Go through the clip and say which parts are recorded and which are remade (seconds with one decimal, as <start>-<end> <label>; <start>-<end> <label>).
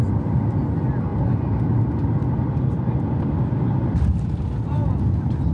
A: 0.0-5.5 recorded